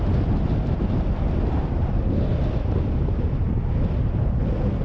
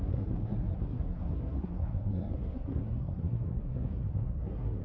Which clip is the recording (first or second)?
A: first